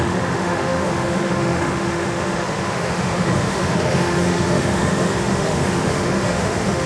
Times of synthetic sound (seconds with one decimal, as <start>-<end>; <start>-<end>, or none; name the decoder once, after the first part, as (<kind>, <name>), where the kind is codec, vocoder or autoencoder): 0.0-6.9 (autoencoder, DAC-VAE)